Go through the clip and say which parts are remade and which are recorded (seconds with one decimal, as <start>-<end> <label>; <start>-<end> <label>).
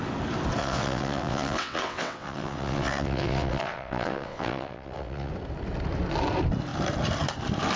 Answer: 0.0-0.6 recorded; 0.6-5.3 remade; 5.3-7.8 recorded